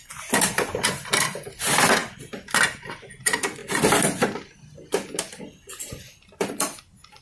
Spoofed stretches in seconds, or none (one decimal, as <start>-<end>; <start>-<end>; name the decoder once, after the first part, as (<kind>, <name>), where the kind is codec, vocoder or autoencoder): none